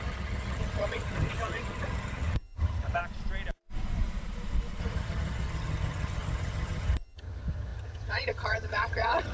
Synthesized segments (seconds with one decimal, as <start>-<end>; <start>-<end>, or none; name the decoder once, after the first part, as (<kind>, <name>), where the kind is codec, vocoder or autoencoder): 0.0-3.0 (vocoder, HiFi-GAN); 4.8-9.3